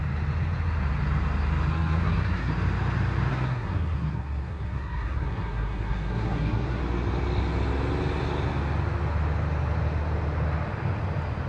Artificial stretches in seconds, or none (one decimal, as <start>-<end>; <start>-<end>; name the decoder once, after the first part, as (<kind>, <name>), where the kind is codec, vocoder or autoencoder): 1.7-2.5 (codec, SNAC); 3.3-6.8